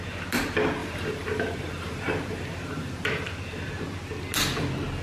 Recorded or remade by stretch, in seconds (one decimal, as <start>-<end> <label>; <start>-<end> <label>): 0.0-0.8 recorded; 0.8-3.3 remade; 3.3-5.0 recorded